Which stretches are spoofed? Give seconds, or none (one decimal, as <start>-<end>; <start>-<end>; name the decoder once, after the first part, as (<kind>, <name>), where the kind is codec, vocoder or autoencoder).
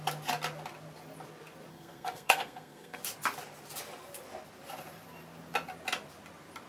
1.7-3.0 (codec, SNAC)